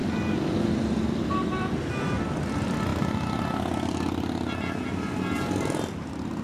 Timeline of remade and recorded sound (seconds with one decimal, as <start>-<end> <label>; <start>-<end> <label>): 0.0-1.9 remade; 1.9-2.9 recorded; 2.9-3.5 remade; 3.5-6.4 recorded